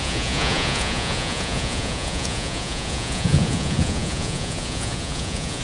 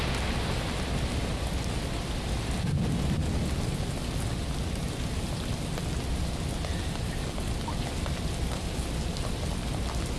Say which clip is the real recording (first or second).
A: second